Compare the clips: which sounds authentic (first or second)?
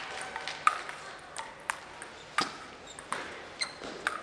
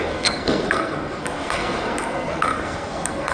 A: first